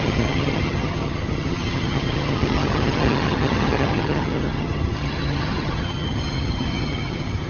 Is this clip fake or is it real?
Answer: fake